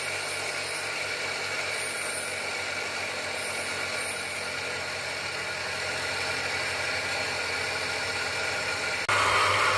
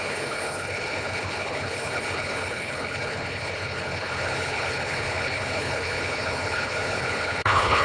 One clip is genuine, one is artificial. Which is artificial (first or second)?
second